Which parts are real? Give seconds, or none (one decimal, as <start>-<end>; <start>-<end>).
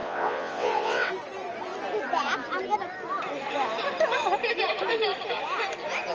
1.1-6.1